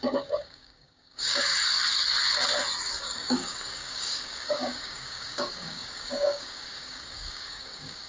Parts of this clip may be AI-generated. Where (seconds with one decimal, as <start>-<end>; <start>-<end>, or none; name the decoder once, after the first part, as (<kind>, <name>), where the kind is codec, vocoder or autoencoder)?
0.0-1.5 (codec, DAC); 3.0-8.1